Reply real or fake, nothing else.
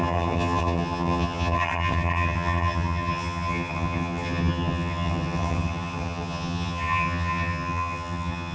fake